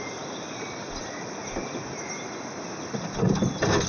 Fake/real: real